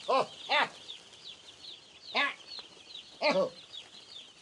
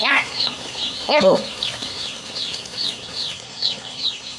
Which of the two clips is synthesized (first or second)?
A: second